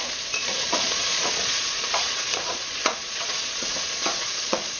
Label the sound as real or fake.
fake